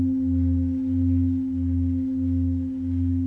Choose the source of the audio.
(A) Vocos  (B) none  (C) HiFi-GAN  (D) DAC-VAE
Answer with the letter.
B